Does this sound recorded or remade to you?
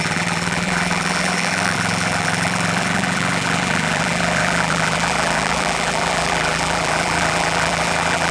remade